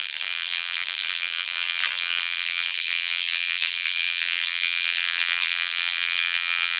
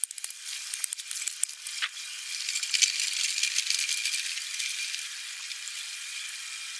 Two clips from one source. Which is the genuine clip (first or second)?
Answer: second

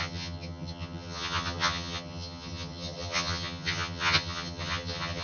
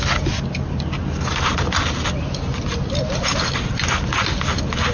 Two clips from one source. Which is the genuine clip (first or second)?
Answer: second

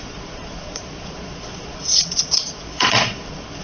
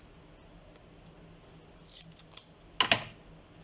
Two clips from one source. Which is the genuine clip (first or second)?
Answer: second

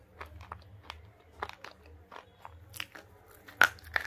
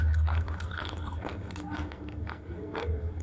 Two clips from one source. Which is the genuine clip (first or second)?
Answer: first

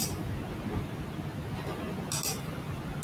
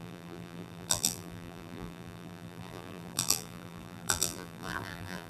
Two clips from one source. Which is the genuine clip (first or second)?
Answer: first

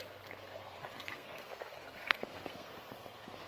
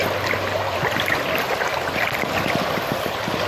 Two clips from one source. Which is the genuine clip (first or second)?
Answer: second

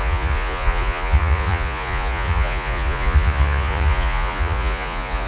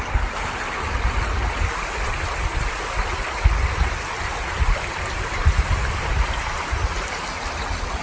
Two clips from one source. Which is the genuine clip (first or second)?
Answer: second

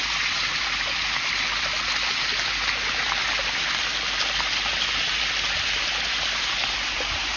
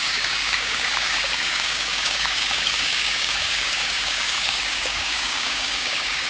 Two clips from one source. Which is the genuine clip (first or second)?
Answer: first